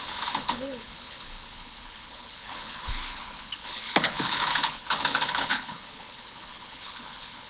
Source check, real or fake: fake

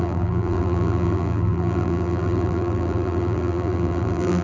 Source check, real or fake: fake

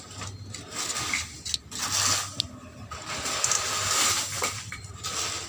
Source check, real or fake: real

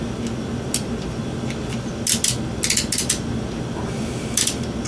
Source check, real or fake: real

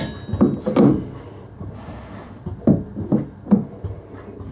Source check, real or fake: real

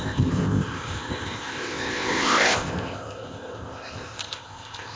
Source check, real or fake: fake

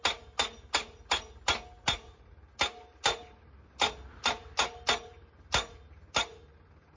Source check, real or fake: real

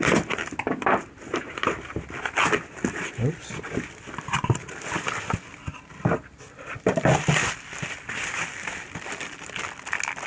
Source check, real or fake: real